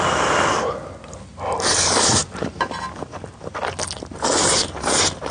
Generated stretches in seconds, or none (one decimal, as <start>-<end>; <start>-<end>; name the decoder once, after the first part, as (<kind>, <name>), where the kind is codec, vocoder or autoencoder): none